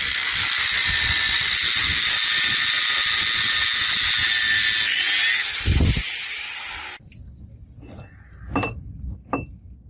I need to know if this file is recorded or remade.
recorded